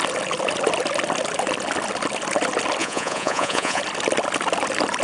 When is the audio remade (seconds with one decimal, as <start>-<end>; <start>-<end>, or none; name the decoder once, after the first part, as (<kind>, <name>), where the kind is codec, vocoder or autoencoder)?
2.8-3.8 (vocoder, Vocos)